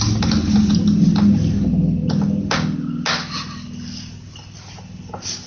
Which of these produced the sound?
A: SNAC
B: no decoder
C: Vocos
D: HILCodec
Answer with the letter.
B